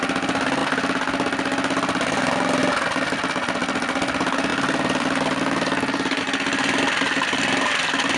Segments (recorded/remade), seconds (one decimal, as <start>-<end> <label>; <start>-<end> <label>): 0.0-4.5 recorded; 4.5-6.2 remade; 6.2-8.2 recorded